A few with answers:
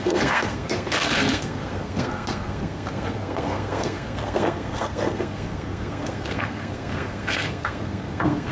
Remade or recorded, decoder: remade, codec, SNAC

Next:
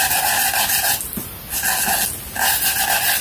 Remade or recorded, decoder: recorded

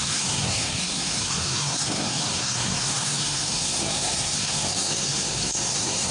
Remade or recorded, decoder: remade, codec, SNAC